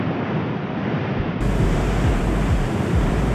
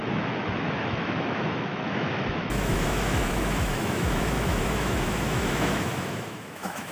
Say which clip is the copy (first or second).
second